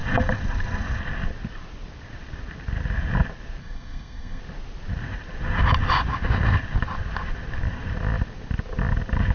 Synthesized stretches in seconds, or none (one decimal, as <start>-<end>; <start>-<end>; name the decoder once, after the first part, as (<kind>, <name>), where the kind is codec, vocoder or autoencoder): 3.6-4.4 (codec, SNAC)